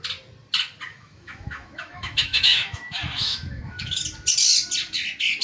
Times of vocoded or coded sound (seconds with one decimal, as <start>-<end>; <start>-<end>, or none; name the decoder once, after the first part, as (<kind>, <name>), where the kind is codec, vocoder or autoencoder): 0.9-4.0 (autoencoder, DAC-VAE)